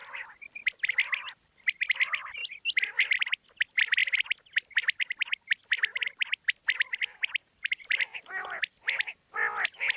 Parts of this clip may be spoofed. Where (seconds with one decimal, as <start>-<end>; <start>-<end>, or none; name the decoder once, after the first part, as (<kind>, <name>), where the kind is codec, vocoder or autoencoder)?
7.4-8.0 (vocoder, BigVGAN v2)